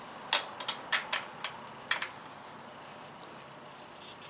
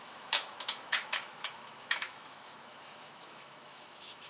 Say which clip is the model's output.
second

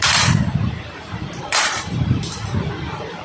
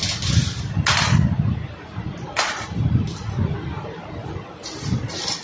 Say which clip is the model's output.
first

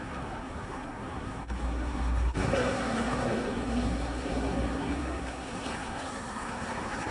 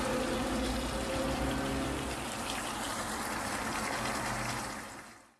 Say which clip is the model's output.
first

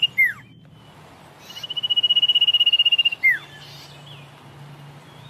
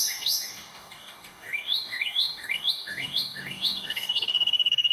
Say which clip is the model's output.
second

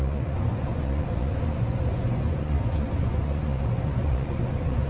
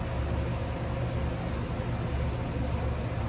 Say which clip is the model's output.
first